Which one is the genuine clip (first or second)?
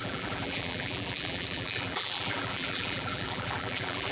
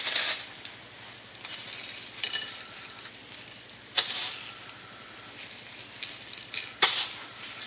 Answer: second